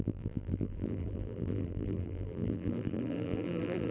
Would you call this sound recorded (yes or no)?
no